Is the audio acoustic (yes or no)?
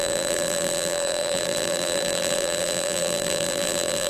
no